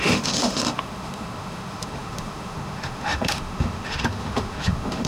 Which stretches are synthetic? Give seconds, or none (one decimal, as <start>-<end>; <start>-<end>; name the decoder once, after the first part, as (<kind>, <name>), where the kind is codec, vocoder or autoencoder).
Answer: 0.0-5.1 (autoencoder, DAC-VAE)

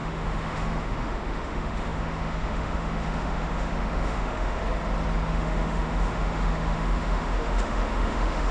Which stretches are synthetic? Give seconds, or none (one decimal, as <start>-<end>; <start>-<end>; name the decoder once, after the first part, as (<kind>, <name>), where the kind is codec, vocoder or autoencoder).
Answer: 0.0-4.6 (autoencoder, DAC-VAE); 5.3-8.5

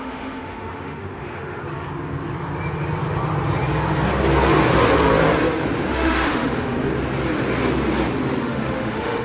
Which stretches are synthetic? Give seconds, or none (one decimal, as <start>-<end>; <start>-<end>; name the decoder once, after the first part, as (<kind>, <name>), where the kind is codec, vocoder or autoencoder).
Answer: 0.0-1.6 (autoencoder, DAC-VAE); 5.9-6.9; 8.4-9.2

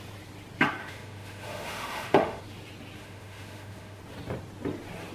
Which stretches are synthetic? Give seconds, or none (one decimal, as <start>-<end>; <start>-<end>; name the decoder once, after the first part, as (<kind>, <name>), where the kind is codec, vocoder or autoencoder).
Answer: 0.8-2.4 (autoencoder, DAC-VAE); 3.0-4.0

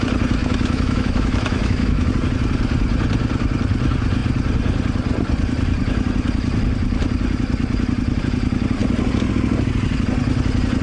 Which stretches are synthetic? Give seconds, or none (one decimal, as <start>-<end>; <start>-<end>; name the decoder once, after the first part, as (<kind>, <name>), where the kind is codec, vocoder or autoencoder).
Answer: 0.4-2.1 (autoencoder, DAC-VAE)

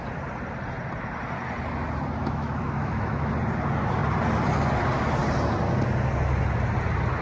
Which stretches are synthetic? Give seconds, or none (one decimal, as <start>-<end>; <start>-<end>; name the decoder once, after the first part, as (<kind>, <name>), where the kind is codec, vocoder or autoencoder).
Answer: 2.2-3.3 (autoencoder, DAC-VAE)